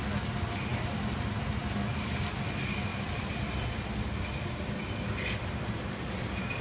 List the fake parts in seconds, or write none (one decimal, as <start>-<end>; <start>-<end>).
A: none